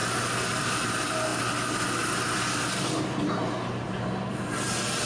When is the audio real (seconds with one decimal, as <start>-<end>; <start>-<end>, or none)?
0.0-5.1